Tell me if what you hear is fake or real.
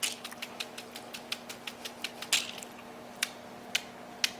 real